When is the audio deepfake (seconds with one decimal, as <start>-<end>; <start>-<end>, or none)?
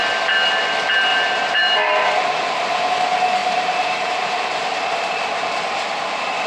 1.1-2.9; 3.4-6.5